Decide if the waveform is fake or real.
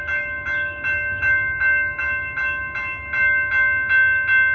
real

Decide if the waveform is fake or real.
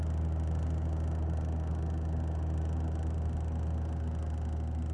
real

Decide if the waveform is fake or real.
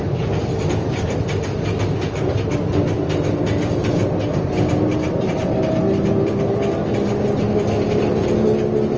real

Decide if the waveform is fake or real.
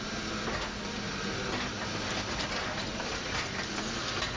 real